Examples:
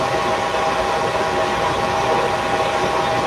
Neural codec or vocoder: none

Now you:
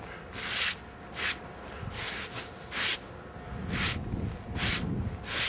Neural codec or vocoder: none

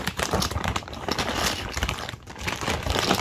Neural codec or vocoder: none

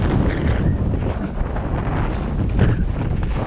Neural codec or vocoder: none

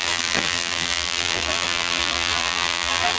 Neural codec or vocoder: vocoder, BigVGAN v2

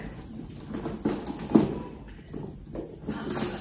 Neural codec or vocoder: none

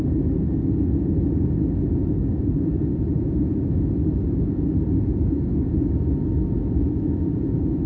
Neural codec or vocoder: none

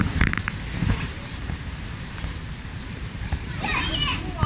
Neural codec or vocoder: vocoder, BigVGAN v2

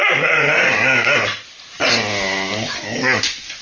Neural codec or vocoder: none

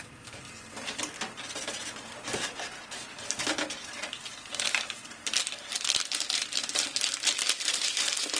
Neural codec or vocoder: none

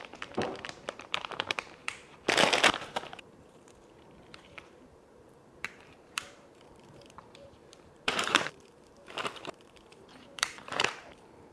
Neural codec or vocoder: vocoder, BigVGAN v2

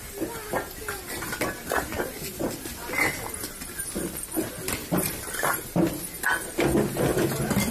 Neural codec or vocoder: none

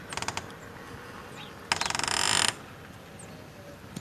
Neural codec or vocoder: none